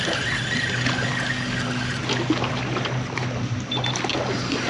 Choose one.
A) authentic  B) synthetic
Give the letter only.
A